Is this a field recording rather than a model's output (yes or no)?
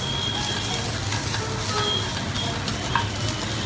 yes